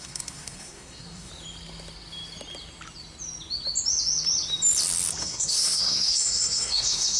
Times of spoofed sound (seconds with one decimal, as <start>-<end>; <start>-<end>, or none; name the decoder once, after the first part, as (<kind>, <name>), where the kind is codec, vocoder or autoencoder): 0.0-1.3 (codec, SNAC); 5.2-7.2